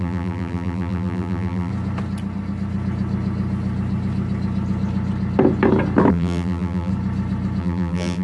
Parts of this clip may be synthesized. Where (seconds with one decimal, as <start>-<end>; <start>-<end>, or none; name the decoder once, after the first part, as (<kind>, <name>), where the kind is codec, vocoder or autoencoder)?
0.0-1.7 (vocoder, BigVGAN v2); 6.1-6.9; 7.6-8.2